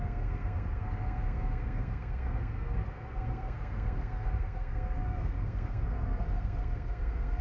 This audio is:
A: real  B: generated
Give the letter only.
B